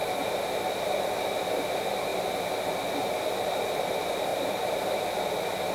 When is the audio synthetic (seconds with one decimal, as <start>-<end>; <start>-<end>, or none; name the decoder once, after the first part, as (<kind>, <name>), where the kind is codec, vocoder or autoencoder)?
0.0-0.6 (vocoder, BigVGAN v2); 4.3-5.3